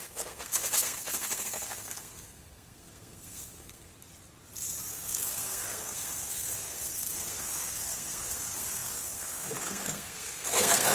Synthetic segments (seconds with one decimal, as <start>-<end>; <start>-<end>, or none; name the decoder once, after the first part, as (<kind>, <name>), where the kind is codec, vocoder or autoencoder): 0.0-3.9 (codec, SNAC); 4.9-10.9